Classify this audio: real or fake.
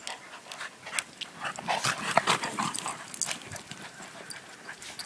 real